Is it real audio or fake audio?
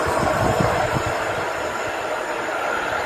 real